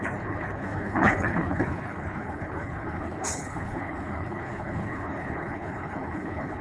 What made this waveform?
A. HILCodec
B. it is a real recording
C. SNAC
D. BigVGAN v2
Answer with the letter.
A